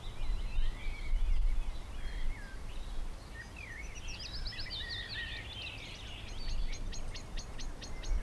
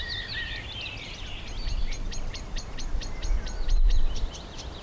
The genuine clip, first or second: first